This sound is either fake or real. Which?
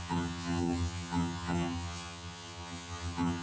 fake